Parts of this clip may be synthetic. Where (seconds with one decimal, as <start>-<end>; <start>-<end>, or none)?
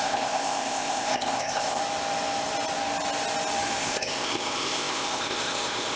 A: 0.0-1.8; 3.8-6.0